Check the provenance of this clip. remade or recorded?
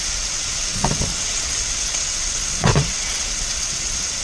remade